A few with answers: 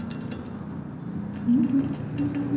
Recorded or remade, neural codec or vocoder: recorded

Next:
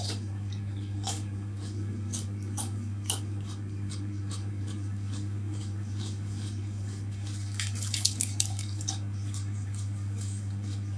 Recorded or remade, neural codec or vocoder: remade, codec, DAC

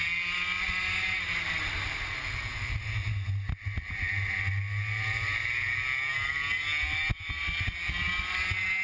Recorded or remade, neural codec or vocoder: recorded